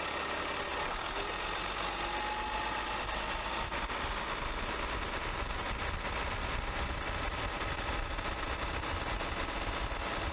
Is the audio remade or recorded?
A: recorded